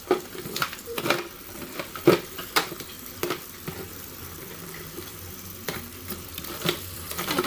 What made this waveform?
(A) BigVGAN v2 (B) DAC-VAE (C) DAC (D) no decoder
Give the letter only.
A